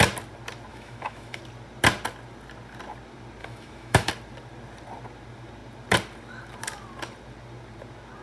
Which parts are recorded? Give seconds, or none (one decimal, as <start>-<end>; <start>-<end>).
0.0-0.7; 1.4-3.4; 4.1-8.2